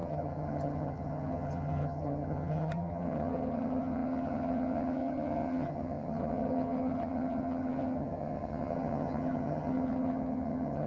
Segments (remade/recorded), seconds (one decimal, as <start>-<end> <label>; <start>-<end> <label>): 0.0-10.9 remade